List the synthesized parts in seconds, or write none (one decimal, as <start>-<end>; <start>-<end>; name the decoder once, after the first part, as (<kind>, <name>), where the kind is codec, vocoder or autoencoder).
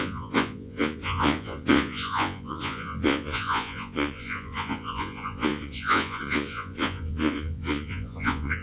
0.0-8.6 (vocoder, Vocos)